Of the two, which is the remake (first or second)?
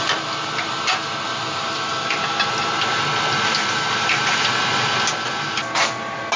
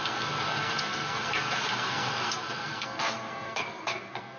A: second